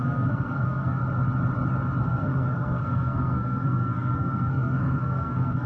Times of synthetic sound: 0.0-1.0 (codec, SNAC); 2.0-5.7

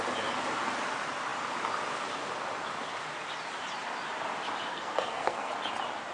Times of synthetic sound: 4.7-5.5 (codec, SNAC)

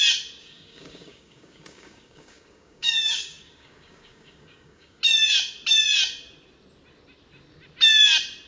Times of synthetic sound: 0.4-5.0 (codec, DAC)

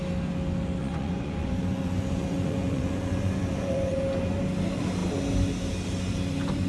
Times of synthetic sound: 0.8-4.0 (vocoder, Vocos)

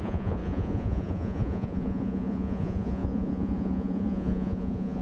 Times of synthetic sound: 0.0-5.0 (vocoder, Vocos)

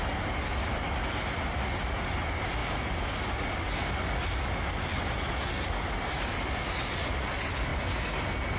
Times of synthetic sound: none

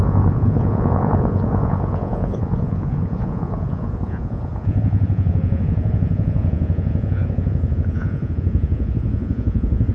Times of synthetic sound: 0.0-9.9 (vocoder, Vocos)